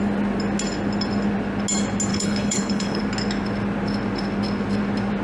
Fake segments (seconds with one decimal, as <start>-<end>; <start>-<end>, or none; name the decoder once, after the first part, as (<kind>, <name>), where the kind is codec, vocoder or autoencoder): 2.1-3.0 (codec, HILCodec)